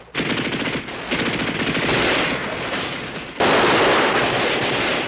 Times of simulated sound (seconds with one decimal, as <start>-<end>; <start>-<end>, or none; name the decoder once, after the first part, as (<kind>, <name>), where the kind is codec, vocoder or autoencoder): none